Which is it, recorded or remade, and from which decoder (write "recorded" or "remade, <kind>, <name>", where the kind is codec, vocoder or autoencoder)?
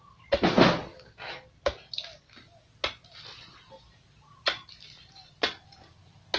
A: recorded